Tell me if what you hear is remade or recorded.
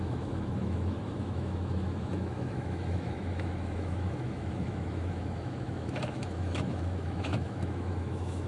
remade